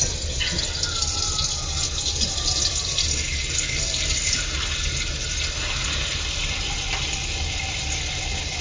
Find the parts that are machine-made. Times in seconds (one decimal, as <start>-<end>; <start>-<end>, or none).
none